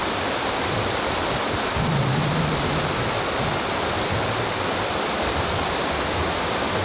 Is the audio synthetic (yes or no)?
no